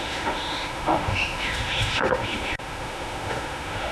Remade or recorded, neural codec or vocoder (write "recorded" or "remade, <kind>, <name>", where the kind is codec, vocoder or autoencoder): remade, autoencoder, DAC-VAE